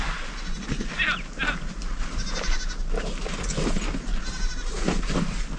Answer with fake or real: real